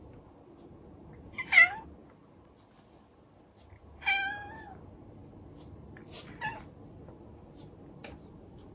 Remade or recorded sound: recorded